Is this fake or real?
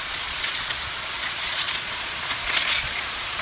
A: fake